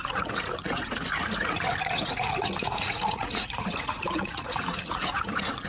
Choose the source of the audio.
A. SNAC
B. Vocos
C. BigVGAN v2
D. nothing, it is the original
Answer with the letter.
B